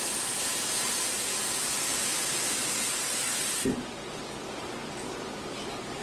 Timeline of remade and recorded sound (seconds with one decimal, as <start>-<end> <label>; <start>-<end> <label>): 0.0-6.0 recorded